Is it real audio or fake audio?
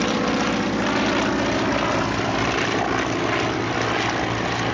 real